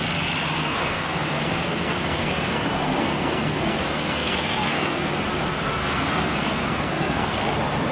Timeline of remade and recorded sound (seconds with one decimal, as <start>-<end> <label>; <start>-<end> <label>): 0.0-0.6 recorded; 0.6-5.1 remade; 5.1-5.7 recorded; 5.7-7.4 remade; 7.4-7.9 recorded